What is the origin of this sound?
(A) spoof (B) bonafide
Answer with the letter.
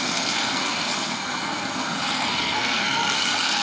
A